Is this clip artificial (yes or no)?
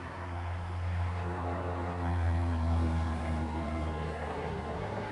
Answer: yes